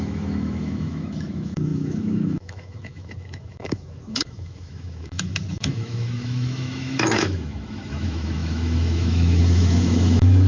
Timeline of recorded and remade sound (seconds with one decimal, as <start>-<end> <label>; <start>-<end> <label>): 0.0-10.5 remade